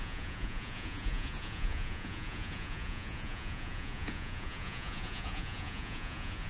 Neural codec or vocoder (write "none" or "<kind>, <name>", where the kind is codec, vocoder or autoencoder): vocoder, Vocos